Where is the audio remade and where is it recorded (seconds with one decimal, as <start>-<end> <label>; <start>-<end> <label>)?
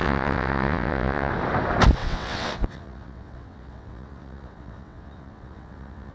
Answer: 0.0-1.3 remade; 1.3-2.0 recorded; 2.0-6.1 remade